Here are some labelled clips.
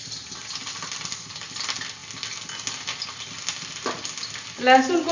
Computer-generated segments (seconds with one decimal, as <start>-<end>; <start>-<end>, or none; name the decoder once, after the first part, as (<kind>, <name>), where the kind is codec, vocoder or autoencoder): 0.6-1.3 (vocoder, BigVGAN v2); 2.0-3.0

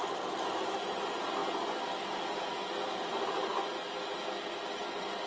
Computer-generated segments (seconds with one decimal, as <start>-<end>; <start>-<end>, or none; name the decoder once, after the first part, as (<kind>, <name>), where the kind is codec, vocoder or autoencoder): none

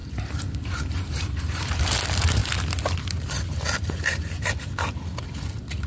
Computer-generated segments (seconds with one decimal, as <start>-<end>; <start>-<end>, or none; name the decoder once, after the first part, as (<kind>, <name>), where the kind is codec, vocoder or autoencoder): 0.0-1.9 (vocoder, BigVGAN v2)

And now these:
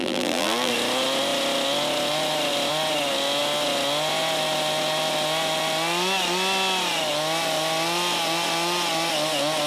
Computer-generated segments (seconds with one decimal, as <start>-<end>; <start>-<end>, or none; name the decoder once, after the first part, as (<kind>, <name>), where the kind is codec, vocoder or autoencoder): 0.0-0.7 (vocoder, BigVGAN v2)

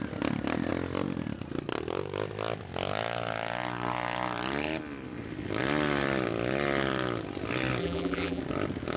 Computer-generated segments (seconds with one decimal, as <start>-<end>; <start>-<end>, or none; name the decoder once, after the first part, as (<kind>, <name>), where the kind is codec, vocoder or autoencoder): 7.8-8.4 (vocoder, BigVGAN v2)

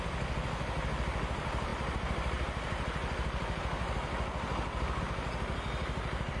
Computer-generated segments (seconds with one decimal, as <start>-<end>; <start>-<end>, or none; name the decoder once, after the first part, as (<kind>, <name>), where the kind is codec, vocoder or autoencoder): 1.7-5.0 (vocoder, BigVGAN v2); 5.5-6.4

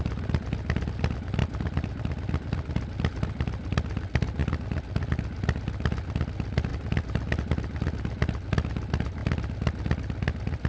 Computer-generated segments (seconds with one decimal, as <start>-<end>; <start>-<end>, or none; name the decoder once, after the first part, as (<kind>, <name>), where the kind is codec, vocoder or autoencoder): 1.4-2.0 (vocoder, BigVGAN v2); 6.7-7.4